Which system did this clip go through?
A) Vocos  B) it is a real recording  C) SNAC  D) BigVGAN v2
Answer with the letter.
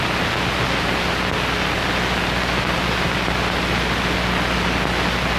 B